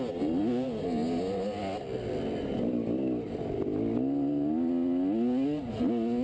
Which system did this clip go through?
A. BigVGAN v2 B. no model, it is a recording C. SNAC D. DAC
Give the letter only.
B